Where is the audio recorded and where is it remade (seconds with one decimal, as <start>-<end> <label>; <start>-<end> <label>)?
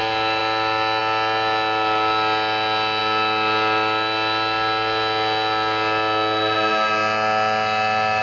0.0-8.2 recorded